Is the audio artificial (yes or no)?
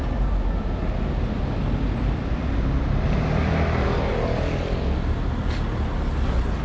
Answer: no